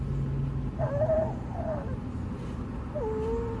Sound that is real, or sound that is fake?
real